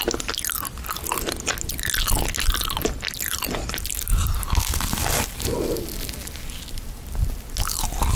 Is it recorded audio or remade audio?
recorded